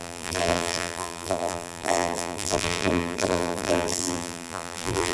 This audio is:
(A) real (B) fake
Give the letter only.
B